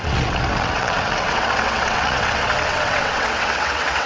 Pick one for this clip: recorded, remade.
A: remade